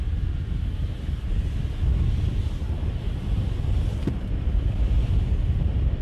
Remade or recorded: recorded